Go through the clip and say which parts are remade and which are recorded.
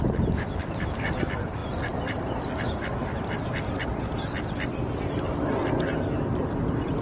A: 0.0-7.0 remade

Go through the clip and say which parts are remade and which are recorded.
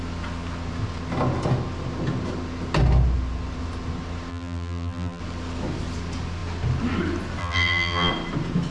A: 0.0-4.3 recorded; 4.3-5.2 remade; 5.2-7.4 recorded; 7.4-8.1 remade; 8.1-8.7 recorded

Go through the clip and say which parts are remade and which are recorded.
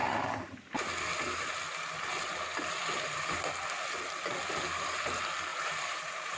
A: 0.0-5.5 recorded; 5.5-6.4 remade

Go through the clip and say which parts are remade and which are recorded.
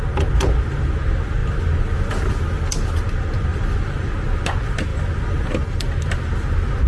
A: 0.0-3.5 recorded; 3.5-4.1 remade; 4.1-4.9 recorded; 4.9-5.5 remade; 5.5-6.9 recorded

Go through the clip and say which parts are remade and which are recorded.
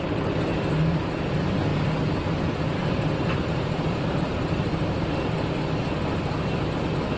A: 0.0-1.7 recorded; 1.7-5.1 remade; 5.1-7.2 recorded